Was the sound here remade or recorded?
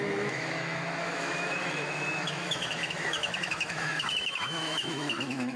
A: remade